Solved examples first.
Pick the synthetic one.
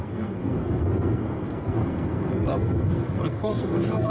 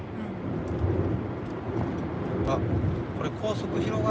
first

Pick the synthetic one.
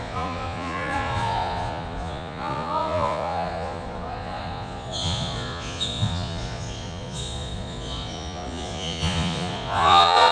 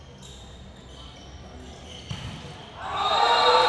first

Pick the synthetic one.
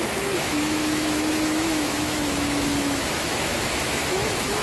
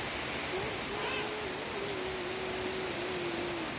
first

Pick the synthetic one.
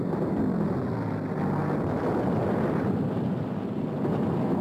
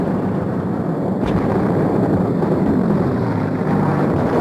second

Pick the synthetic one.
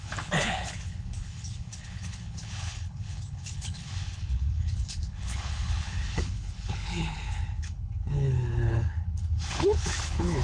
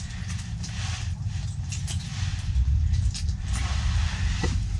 first